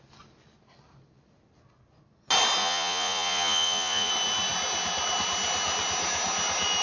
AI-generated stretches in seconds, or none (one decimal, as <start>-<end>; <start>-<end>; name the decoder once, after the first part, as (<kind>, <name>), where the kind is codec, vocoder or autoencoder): 2.6-4.1 (vocoder, Vocos)